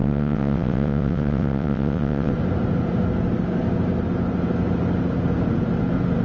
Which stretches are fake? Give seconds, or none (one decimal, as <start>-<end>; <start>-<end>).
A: 0.0-2.3